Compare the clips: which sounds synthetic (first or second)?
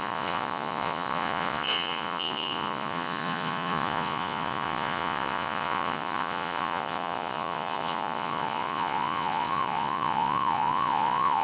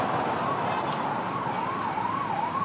first